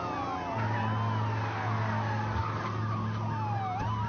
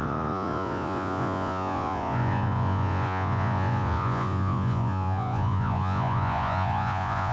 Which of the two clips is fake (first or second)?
second